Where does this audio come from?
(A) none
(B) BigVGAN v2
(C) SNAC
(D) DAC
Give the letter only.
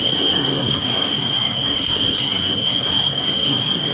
C